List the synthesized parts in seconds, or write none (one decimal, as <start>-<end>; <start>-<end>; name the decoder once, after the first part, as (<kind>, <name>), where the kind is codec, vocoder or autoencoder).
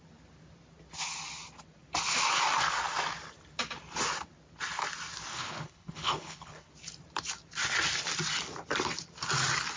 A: 5.3-6.7 (codec, HILCodec)